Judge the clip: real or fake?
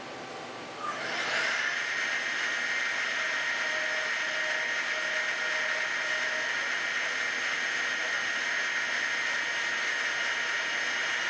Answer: real